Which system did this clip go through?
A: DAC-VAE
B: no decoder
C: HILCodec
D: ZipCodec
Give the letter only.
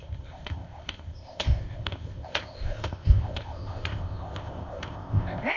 D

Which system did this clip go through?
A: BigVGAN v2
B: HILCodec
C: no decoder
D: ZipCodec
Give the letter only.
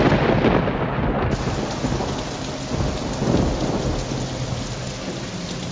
C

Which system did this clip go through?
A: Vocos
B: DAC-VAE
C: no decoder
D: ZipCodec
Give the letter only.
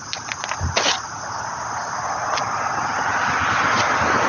C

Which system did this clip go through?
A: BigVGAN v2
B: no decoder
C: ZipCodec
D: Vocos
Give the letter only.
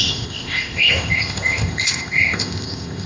C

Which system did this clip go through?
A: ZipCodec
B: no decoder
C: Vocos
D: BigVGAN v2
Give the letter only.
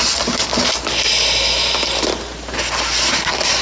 B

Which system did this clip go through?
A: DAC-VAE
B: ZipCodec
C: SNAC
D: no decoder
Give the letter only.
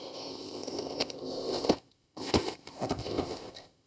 B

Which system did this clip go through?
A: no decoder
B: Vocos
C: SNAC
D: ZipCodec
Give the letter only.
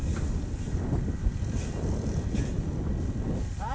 A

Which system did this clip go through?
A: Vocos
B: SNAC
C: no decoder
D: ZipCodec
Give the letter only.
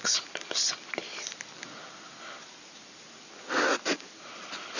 C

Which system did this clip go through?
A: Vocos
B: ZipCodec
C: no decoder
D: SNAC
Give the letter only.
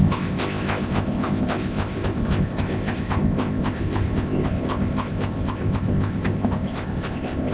B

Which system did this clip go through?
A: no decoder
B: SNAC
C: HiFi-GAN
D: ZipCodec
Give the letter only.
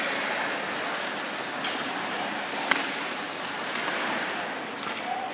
A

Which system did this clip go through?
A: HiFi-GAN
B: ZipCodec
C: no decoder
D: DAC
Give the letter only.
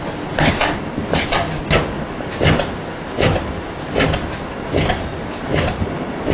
C